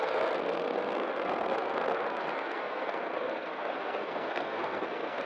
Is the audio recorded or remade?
remade